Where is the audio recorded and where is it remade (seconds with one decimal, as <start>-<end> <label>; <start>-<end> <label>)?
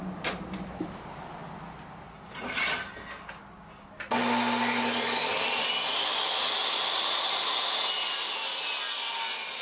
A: 0.0-9.6 recorded